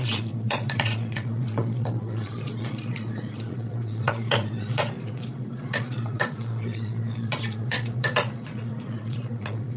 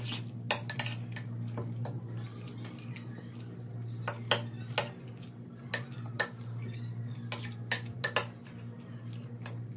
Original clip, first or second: second